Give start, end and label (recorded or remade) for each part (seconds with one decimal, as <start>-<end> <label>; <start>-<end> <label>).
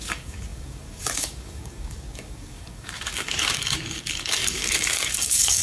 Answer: 0.0-5.6 remade